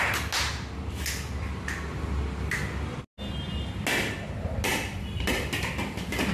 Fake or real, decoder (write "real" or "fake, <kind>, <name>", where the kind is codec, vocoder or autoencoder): real